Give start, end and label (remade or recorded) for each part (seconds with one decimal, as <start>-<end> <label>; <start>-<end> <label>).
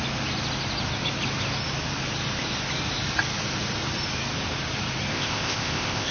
0.0-5.1 recorded; 5.1-6.1 remade